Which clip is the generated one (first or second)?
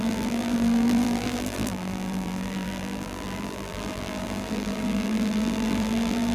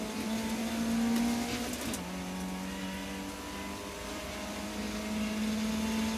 first